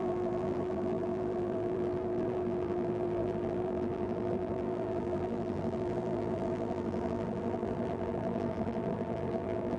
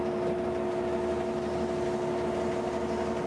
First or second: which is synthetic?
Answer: first